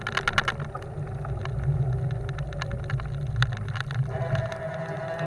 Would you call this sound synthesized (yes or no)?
no